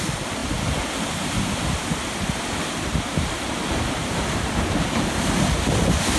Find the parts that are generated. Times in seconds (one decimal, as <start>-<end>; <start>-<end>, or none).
none